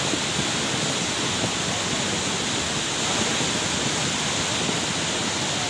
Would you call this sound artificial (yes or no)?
no